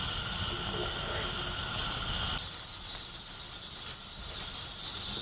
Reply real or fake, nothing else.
real